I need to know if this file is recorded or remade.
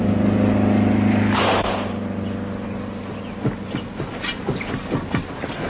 recorded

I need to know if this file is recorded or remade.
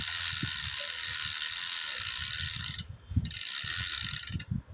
recorded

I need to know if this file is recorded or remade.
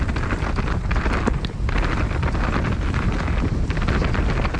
recorded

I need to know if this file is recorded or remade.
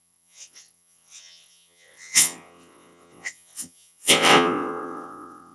remade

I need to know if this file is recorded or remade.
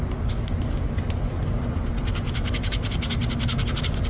recorded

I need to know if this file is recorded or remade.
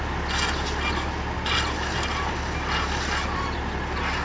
recorded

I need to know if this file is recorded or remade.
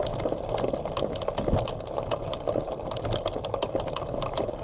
recorded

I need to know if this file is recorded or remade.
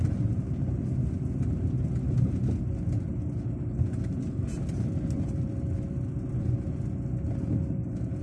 recorded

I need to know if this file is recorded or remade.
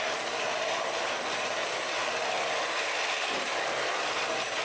remade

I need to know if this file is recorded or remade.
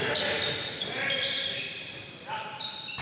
remade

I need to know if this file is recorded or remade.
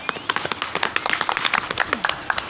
recorded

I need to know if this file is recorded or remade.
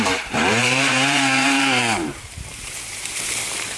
remade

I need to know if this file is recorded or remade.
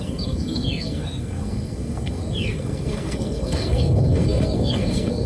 remade